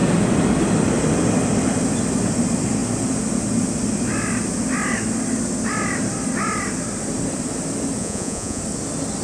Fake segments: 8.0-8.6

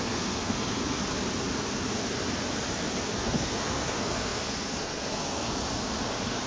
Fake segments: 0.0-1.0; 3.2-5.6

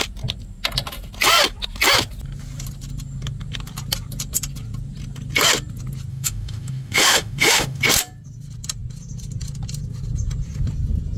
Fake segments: 6.1-7.8

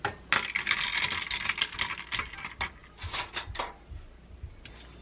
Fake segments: none

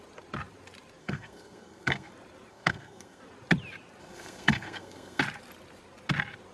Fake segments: 1.0-2.1; 2.5-3.2; 4.0-5.2

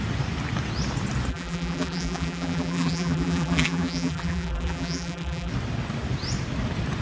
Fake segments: 1.3-5.5